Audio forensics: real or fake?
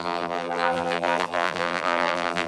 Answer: fake